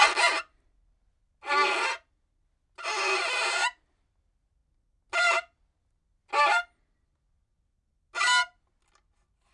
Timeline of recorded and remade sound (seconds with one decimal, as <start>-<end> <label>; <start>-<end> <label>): 0.0-9.5 recorded